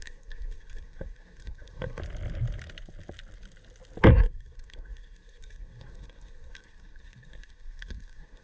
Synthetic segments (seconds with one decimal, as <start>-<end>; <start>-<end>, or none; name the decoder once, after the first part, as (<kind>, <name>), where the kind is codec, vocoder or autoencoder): 0.0-2.0 (codec, SNAC); 4.1-8.4